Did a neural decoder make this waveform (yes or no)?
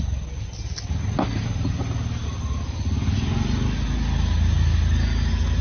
no